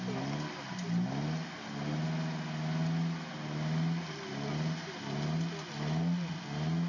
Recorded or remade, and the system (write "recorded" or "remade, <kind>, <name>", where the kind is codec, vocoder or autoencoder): recorded